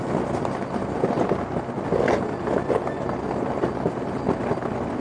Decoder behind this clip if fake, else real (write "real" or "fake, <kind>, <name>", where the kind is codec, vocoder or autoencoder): real